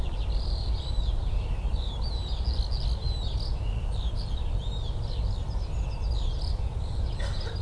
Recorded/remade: recorded